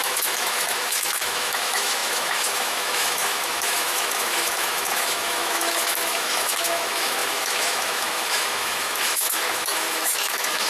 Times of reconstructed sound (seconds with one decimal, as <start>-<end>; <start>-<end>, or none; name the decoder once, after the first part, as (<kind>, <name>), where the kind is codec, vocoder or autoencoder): 0.0-10.7 (autoencoder, DAC-VAE)